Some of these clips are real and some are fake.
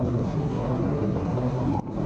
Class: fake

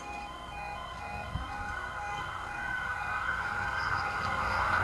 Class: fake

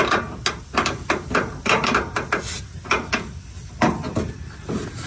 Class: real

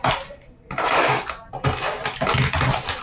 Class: real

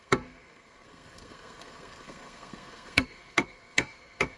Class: fake